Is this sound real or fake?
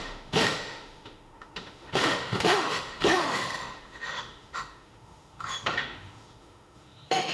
fake